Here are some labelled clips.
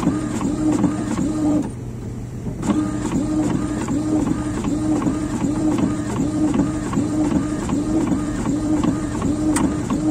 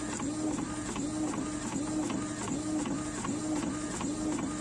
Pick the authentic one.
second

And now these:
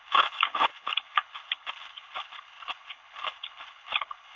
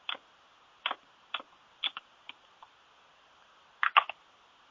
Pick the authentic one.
second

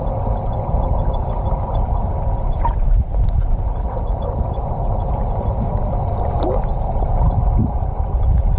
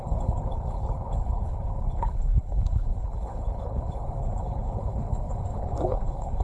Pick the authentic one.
first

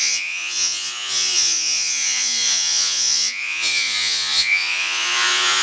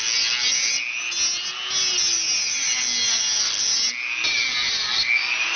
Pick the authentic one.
second